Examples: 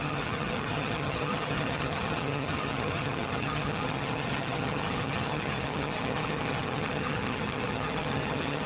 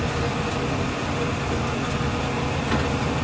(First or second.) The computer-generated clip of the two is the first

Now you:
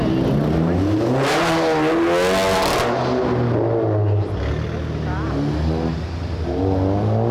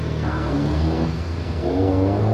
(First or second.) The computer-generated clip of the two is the second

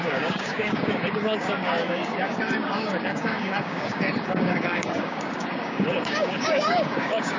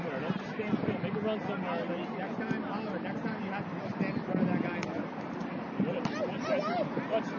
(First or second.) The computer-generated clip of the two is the first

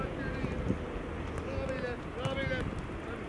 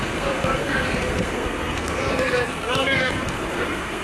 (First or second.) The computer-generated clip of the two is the second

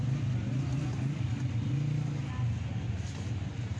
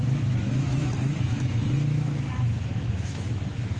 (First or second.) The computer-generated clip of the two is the second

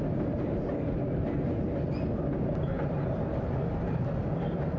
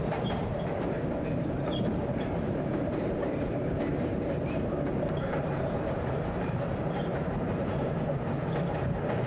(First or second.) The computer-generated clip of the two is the second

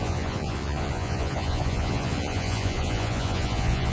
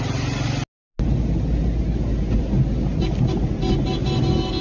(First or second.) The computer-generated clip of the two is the first